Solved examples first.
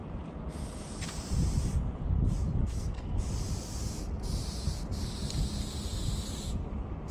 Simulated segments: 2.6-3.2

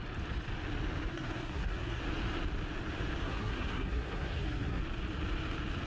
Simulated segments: 1.1-2.0; 3.2-4.8